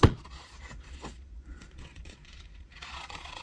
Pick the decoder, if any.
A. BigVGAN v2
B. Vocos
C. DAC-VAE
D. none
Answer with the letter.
B